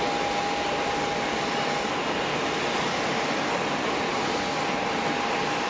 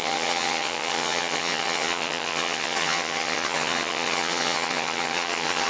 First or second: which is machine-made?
second